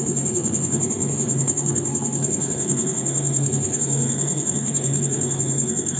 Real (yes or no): no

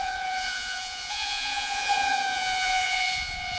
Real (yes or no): no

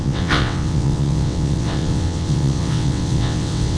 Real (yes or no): no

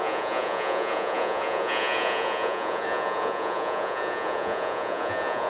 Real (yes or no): no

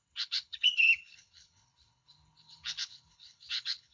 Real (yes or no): no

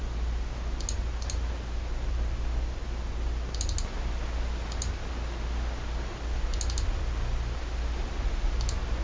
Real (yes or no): yes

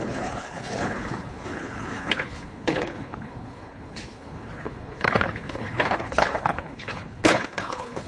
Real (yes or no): no